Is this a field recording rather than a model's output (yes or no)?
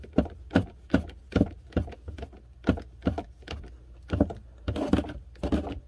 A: yes